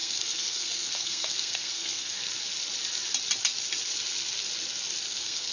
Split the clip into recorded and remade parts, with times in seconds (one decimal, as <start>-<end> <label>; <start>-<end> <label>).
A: 0.0-2.2 remade; 2.2-5.0 recorded; 5.0-5.5 remade